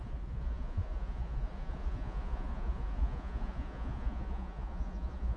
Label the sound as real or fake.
fake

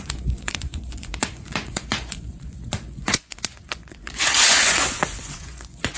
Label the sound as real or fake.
fake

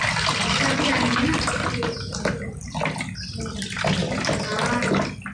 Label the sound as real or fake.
real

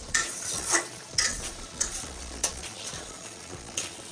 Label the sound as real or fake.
fake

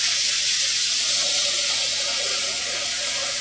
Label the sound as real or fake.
fake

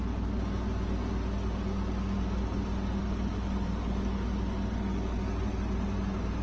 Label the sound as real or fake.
real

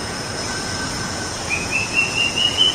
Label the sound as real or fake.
fake